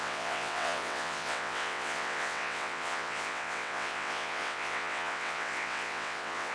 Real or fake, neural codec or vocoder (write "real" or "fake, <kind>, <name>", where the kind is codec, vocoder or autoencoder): fake, vocoder, WaveNeXt